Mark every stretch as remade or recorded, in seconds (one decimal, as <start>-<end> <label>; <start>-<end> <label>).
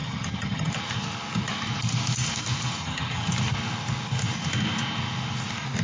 0.0-0.7 remade; 0.7-2.8 recorded; 2.8-3.3 remade; 3.3-5.8 recorded